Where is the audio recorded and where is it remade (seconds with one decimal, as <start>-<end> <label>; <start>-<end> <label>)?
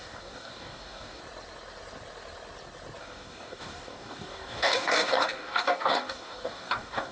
0.0-1.2 remade; 1.2-3.0 recorded; 3.0-7.1 remade